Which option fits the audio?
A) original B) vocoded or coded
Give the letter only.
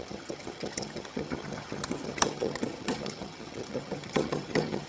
B